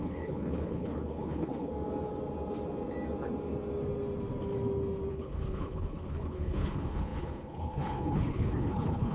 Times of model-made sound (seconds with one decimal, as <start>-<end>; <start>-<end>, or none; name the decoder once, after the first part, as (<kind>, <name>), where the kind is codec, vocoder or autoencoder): 0.0-1.7 (codec, HILCodec); 5.1-9.1